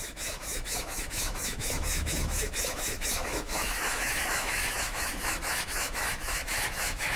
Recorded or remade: remade